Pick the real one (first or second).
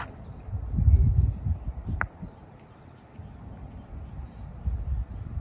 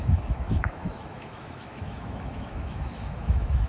first